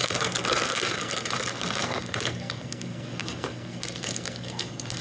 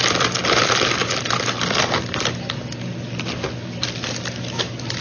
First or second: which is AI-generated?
first